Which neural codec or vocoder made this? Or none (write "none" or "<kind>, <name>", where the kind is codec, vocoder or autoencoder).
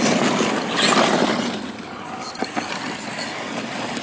none